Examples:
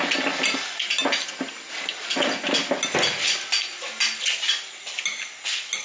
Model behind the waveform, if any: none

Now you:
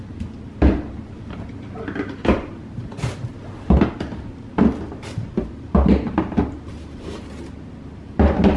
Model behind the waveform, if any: none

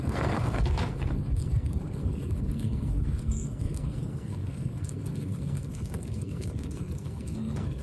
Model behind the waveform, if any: codec, SNAC